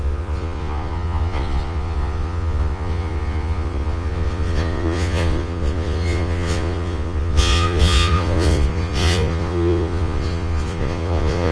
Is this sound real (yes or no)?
no